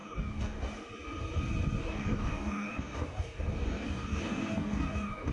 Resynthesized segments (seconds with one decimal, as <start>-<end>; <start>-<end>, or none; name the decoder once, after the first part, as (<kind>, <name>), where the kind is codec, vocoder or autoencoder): 0.0-0.6 (codec, DAC); 1.8-5.3